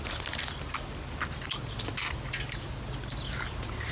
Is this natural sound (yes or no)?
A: yes